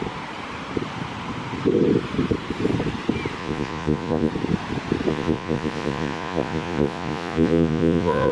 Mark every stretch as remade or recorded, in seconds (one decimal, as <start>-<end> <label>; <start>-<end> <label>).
0.0-3.4 recorded; 3.4-4.3 remade; 4.3-5.1 recorded; 5.1-8.3 remade